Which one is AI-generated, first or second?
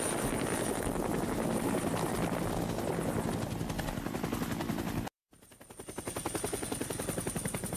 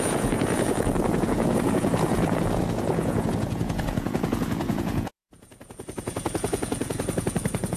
second